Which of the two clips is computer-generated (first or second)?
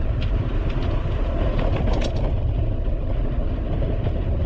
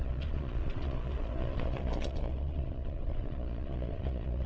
second